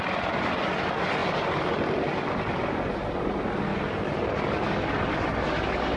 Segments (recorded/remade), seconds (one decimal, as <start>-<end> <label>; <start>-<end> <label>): 0.0-6.0 recorded